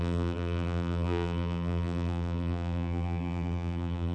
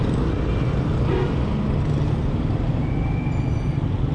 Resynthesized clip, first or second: first